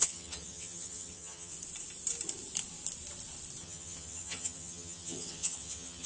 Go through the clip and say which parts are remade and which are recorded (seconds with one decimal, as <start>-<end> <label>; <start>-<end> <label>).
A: 0.0-1.5 remade; 1.5-3.6 recorded; 3.6-6.1 remade